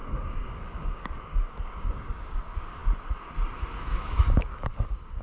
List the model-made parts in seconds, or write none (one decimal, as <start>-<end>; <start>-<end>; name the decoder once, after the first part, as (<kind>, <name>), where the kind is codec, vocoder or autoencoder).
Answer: 0.0-2.8 (codec, DAC); 3.8-5.2